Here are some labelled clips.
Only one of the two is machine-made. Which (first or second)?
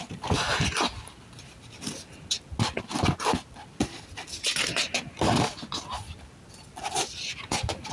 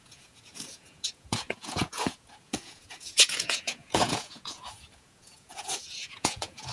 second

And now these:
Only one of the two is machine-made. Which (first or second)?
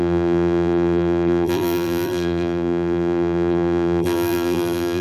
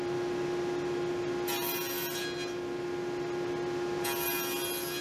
first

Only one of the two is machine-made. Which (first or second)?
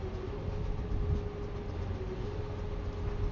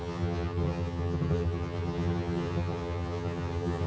second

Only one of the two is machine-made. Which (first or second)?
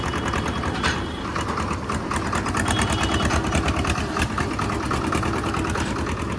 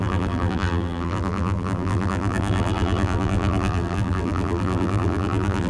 second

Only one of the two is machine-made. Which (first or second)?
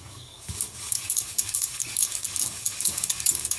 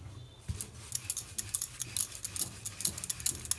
first